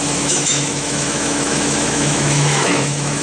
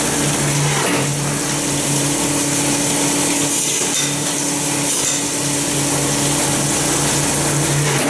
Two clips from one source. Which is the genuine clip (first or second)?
second